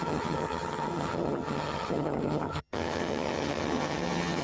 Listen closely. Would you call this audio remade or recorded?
remade